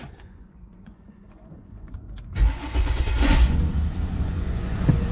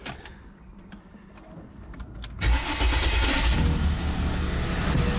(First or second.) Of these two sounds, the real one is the second